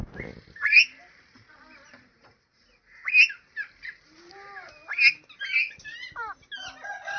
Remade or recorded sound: recorded